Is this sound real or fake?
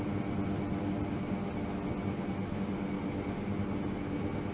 real